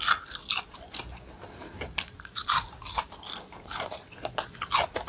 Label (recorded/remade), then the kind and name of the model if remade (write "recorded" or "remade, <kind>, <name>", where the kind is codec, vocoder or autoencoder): recorded